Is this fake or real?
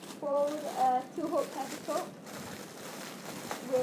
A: fake